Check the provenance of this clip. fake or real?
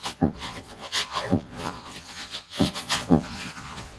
fake